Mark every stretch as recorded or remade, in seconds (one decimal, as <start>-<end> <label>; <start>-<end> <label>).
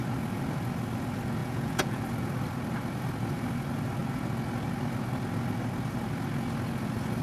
0.0-1.4 recorded; 1.4-2.0 remade; 2.0-7.2 recorded